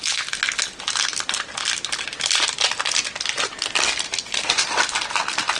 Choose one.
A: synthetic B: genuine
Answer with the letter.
B